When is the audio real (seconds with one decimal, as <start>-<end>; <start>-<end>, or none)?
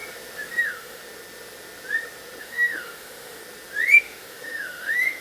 0.0-0.6; 1.0-2.4; 3.4-4.0